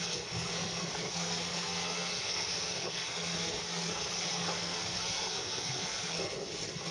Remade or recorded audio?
remade